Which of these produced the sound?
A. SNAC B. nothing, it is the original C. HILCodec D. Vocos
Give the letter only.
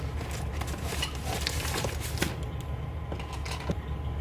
B